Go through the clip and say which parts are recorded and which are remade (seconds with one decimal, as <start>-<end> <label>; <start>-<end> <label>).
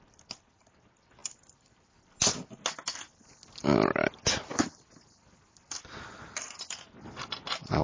0.0-7.8 recorded